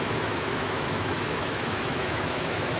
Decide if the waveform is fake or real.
fake